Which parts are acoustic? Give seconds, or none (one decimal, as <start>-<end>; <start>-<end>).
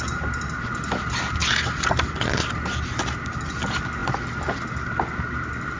0.0-5.8